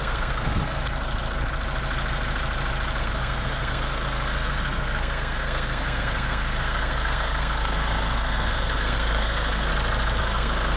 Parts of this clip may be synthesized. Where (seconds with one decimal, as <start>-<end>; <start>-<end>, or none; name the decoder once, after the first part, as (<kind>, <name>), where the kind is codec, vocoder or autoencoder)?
0.0-0.8 (codec, SNAC); 3.0-9.7; 10.2-10.8